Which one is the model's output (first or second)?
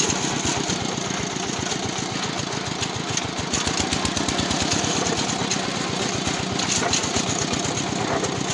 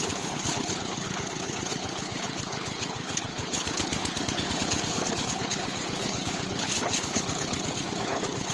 second